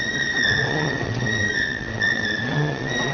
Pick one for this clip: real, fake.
fake